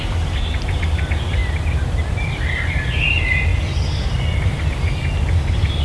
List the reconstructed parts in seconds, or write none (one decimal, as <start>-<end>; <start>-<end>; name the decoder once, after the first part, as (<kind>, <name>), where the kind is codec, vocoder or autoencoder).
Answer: none